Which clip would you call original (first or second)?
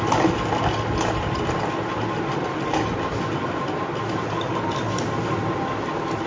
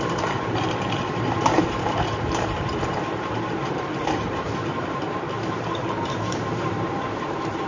first